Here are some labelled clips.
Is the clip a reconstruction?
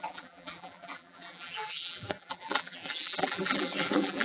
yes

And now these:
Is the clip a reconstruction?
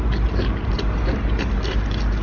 no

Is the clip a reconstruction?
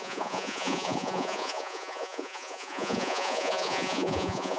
yes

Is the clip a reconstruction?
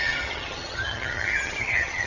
yes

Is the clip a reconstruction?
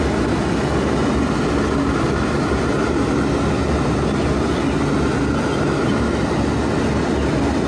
no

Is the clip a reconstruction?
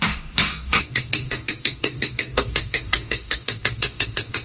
yes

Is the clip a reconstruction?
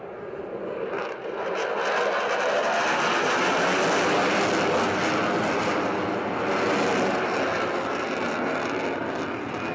no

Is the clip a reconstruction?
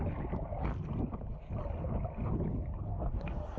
no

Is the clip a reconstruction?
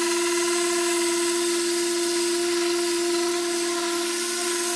no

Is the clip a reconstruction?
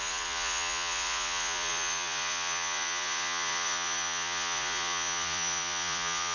yes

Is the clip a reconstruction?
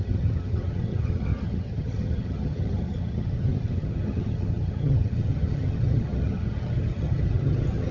yes